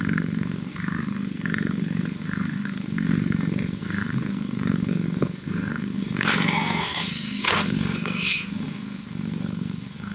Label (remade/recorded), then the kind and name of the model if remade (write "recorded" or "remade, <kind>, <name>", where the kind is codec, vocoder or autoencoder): remade, codec, SNAC